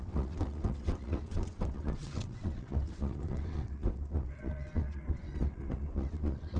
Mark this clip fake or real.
fake